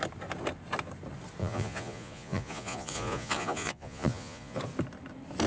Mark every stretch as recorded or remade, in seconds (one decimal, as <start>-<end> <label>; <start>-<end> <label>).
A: 0.0-1.4 recorded; 1.4-4.6 remade; 4.6-5.5 recorded